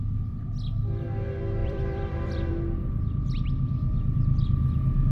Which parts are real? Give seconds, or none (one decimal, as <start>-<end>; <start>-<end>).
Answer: 0.0-1.6; 2.5-5.1